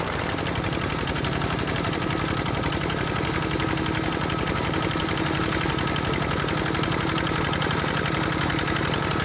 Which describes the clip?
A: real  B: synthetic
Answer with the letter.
A